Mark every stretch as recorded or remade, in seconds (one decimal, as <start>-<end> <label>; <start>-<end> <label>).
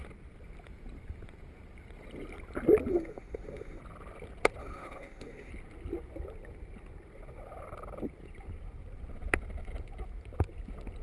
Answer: 0.0-2.9 recorded; 2.9-3.8 remade; 3.8-4.6 recorded; 4.6-5.5 remade; 5.5-11.0 recorded